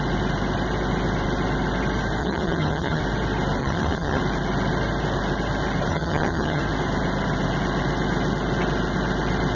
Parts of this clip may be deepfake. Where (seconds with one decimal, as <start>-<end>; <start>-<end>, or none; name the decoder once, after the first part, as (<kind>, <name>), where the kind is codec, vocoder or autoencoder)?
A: 2.2-3.0 (vocoder, HiFi-GAN); 3.6-4.2; 5.9-6.6